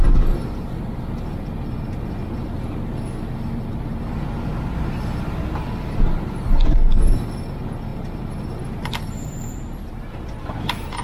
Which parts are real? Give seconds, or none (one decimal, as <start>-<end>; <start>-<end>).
0.0-11.0